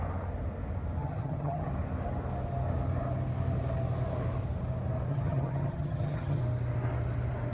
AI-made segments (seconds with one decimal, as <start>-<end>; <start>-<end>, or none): 1.0-1.7; 5.1-6.4